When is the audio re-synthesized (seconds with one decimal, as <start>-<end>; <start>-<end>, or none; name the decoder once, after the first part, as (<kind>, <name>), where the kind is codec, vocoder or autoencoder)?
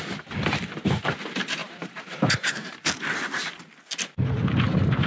1.6-2.3 (vocoder, BigVGAN v2)